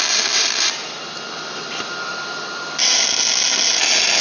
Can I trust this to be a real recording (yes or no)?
yes